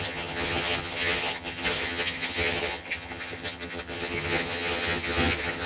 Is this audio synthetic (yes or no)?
yes